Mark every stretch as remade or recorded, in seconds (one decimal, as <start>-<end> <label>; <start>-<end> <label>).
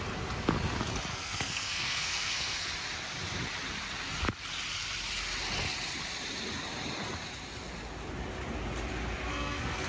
0.0-1.1 recorded; 1.1-2.7 remade; 2.7-9.3 recorded; 9.3-9.9 remade